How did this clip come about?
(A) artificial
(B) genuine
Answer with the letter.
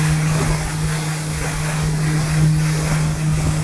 A